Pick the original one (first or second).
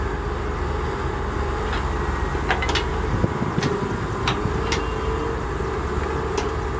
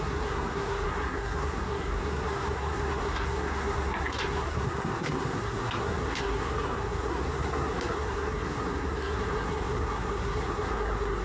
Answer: first